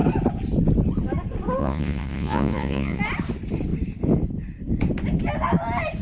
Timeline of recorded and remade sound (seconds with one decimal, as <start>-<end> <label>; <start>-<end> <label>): 0.0-1.6 recorded; 1.6-3.0 remade; 3.0-6.0 recorded